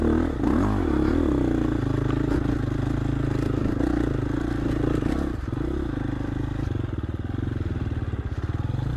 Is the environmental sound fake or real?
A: real